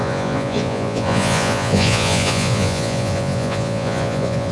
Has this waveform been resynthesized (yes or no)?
yes